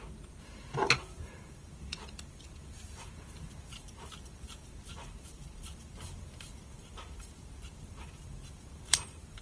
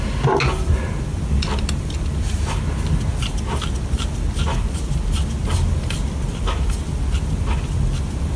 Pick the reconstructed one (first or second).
first